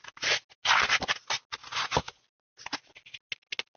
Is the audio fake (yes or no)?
no